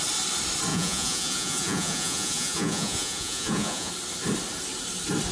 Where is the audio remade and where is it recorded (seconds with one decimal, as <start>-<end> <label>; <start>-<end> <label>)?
0.0-0.7 recorded; 0.7-3.9 remade; 3.9-5.3 recorded